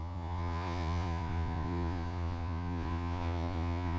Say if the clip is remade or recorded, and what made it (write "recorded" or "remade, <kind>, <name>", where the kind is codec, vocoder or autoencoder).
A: remade, vocoder, Vocos